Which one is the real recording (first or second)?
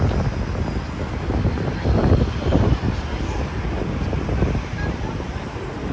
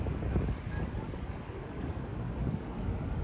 first